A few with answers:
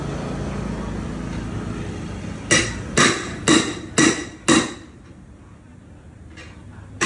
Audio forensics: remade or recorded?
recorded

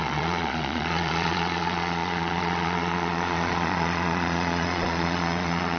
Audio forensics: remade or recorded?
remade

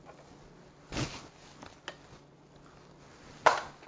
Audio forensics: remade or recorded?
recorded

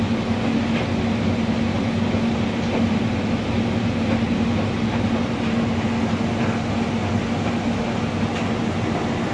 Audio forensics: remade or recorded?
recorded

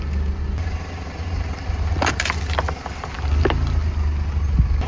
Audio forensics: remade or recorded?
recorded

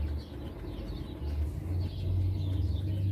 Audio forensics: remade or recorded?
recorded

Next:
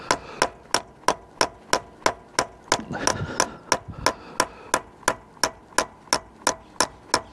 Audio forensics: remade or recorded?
recorded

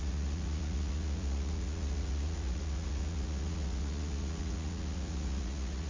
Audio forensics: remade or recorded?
remade